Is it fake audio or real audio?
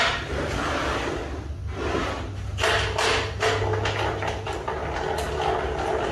real